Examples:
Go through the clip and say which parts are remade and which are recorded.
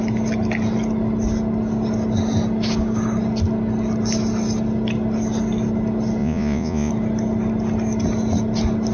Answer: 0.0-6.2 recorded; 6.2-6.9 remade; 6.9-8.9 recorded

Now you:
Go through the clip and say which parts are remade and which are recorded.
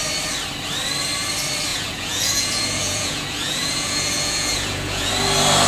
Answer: 0.0-1.7 recorded; 1.7-5.1 remade; 5.1-5.7 recorded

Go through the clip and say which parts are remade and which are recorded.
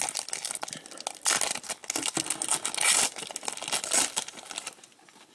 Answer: 0.0-5.3 recorded